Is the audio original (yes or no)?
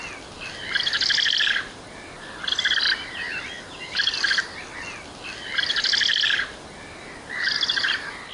yes